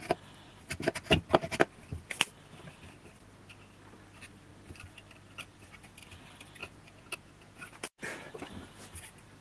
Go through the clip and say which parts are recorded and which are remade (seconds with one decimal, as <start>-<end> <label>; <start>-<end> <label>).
0.0-6.6 recorded; 6.6-8.3 remade; 8.3-9.4 recorded